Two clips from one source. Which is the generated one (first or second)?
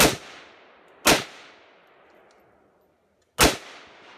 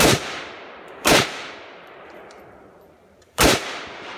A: second